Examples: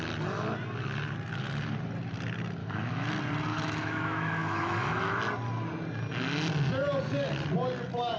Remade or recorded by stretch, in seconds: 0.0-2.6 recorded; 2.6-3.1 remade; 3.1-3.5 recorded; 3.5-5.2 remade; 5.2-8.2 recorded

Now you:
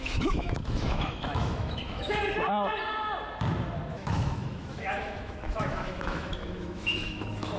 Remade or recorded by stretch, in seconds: 0.0-2.2 remade; 2.2-3.9 recorded; 3.9-7.6 remade

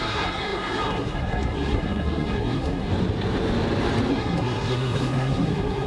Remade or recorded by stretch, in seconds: 0.0-2.9 remade; 2.9-4.1 recorded; 4.1-5.9 remade